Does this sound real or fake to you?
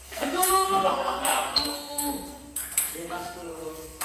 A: fake